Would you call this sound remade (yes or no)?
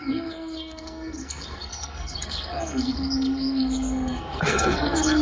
yes